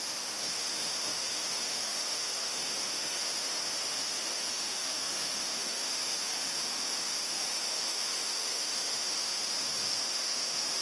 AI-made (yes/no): yes